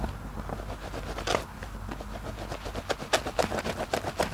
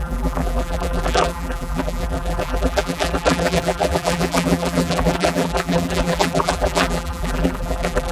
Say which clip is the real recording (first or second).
first